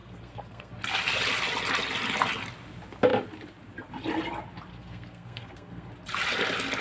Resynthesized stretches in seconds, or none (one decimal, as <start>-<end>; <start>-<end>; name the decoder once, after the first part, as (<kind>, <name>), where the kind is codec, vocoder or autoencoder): 0.0-0.7 (codec, SNAC); 4.7-5.9